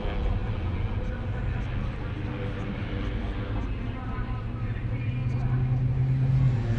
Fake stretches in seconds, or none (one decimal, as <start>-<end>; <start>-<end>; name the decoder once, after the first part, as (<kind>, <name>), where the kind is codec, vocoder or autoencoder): none